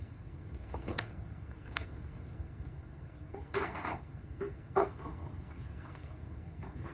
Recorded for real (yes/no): no